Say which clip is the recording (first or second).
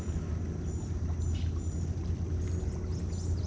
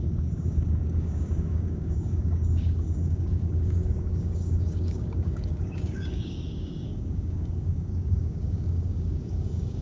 first